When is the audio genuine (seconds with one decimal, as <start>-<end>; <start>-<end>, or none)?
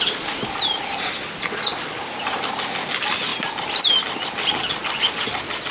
0.0-5.7